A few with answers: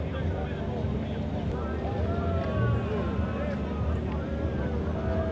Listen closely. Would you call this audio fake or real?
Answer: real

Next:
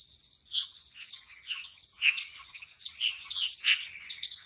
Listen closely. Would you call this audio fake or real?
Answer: fake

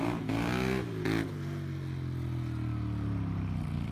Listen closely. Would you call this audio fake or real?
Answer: real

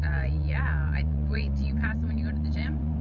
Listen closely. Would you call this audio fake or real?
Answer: fake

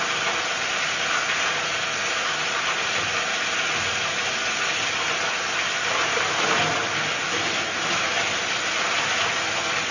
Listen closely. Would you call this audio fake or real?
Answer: real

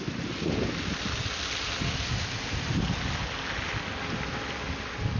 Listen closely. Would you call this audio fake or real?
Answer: real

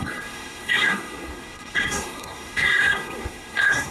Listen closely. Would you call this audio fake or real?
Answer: fake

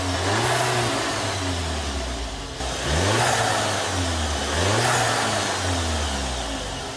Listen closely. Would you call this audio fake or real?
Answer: real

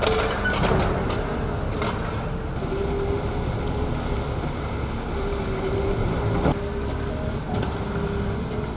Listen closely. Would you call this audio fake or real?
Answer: real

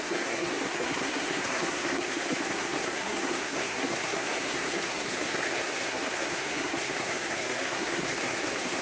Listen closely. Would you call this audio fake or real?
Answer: fake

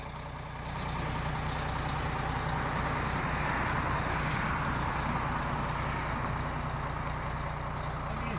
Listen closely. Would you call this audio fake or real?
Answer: real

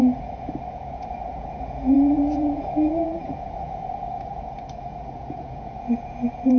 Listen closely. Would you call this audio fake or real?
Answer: fake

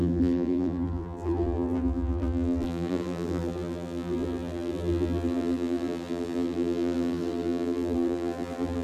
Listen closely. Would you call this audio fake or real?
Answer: fake